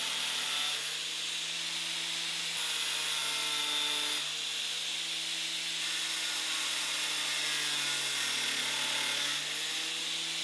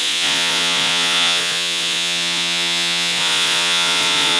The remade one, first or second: second